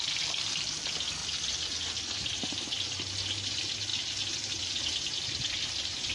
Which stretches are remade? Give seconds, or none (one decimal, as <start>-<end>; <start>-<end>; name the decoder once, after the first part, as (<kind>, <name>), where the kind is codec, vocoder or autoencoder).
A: none

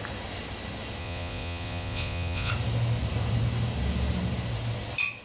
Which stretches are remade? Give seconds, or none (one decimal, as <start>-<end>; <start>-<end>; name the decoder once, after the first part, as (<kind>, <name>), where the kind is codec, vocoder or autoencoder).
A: 1.0-2.5 (vocoder, Vocos)

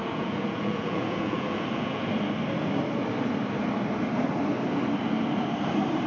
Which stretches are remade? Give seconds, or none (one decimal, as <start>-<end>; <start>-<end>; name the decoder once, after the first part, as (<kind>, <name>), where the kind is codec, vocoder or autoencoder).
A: 0.0-2.1 (vocoder, Vocos)

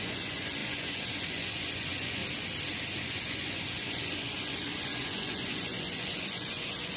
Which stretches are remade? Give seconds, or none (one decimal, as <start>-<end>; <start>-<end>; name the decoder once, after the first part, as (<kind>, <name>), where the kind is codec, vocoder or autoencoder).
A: 0.0-2.2 (vocoder, Vocos); 2.9-7.0

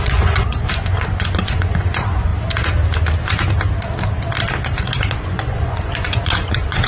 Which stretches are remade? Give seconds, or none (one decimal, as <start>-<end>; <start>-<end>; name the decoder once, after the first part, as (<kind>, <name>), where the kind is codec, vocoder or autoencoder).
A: 0.0-2.3 (vocoder, Vocos); 4.8-6.9

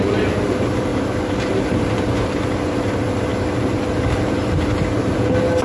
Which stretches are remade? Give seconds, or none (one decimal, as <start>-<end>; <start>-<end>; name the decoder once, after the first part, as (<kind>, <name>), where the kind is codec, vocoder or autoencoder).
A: none

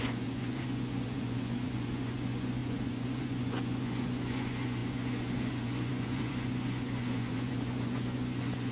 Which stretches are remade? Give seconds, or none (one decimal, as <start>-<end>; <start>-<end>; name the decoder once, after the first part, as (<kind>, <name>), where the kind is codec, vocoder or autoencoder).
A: 0.0-8.7 (vocoder, Vocos)

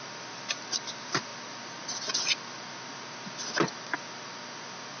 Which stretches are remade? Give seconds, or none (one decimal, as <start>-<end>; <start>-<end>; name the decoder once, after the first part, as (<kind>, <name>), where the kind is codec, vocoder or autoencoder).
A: none